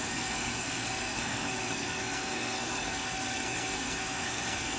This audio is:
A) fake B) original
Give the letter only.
A